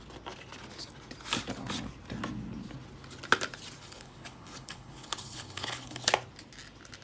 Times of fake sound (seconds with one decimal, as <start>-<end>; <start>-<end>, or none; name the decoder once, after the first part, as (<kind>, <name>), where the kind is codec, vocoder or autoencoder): 3.8-6.1 (codec, HILCodec)